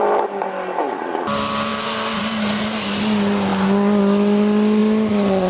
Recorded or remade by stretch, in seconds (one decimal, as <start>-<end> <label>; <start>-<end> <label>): 0.0-5.5 recorded